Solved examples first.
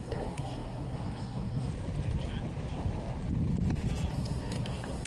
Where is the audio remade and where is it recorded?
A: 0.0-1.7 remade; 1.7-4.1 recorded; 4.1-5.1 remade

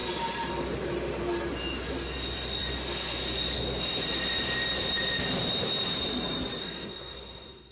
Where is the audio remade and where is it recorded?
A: 0.0-6.6 recorded; 6.6-7.7 remade